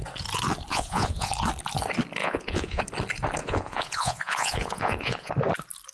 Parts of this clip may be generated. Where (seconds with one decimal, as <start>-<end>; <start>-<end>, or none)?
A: 0.7-1.3; 2.2-2.8; 3.4-5.3